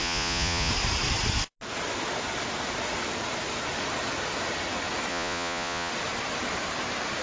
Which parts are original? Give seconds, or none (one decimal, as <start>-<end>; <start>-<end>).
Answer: 0.7-5.1; 5.9-7.2